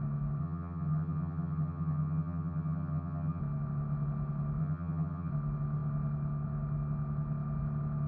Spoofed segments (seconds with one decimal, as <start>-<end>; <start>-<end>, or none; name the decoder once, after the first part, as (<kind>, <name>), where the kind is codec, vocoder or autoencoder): 0.4-3.4 (vocoder, HiFi-GAN); 4.6-5.3